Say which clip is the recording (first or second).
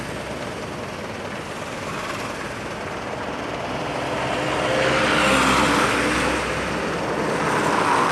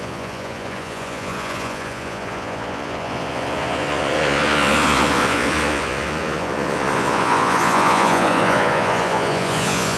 first